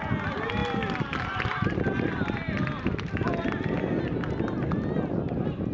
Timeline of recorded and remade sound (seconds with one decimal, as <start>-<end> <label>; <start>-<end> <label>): 0.0-5.7 recorded